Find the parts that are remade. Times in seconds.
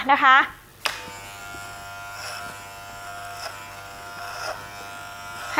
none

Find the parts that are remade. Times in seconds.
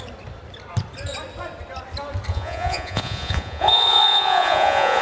2.3-5.0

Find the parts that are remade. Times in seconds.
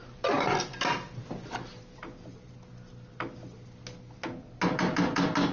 none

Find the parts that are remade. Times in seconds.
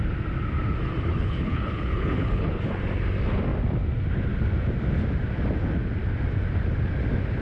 1.1-2.6